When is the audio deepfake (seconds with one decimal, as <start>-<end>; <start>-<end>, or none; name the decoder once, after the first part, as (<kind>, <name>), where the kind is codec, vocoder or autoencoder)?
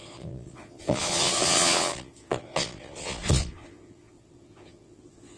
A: 0.0-5.4 (vocoder, Vocos)